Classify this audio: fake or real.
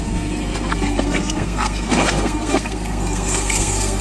fake